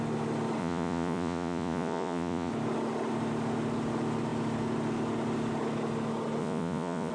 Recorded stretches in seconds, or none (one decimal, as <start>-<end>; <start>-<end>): 0.0-0.6; 2.5-6.4